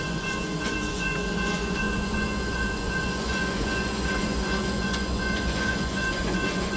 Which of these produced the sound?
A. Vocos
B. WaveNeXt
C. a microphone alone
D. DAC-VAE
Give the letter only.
A